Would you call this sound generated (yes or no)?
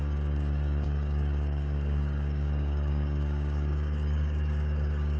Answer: yes